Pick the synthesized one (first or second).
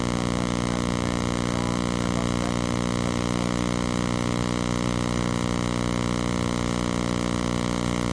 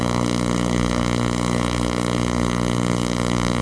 second